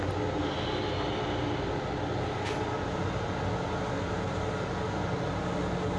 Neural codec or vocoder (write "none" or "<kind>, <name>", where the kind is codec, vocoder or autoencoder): none